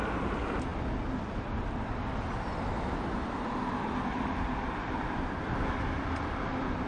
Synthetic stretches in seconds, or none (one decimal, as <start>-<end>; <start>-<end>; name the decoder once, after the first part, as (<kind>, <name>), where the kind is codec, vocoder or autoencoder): none